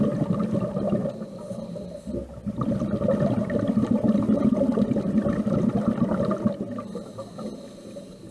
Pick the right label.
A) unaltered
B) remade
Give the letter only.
A